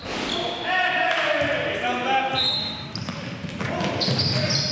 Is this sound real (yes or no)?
yes